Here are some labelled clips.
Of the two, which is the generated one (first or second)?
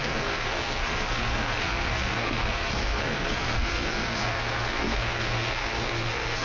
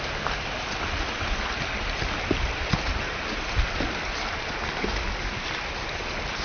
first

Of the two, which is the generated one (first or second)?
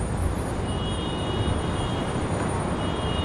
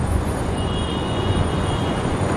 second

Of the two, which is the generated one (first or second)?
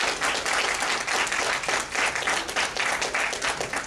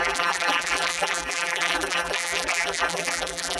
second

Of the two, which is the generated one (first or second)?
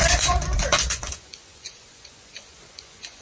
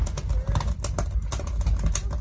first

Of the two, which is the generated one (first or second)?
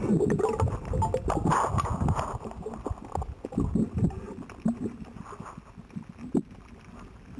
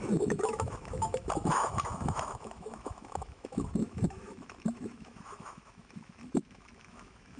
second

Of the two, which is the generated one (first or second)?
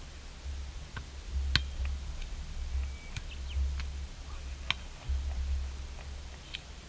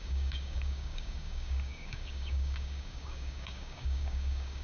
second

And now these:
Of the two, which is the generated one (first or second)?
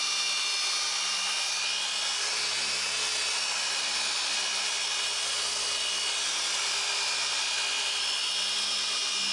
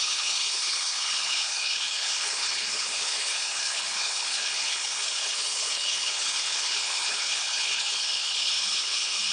second